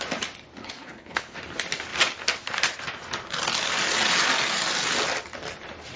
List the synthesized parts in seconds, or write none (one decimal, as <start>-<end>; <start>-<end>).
0.6-1.4